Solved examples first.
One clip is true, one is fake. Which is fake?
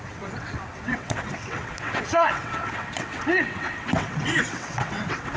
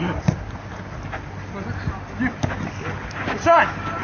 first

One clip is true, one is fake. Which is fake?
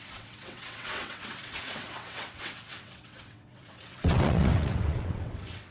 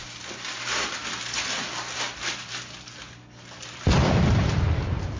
first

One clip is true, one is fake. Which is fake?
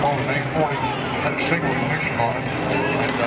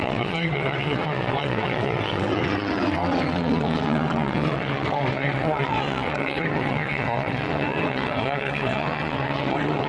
second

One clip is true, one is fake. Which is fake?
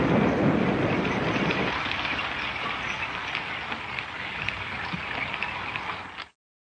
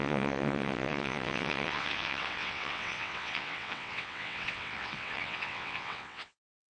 second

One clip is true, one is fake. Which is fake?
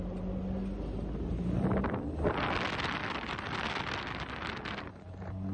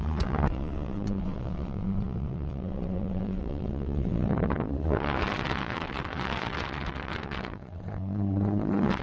second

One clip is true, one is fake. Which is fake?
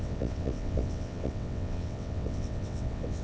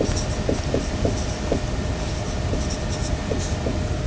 first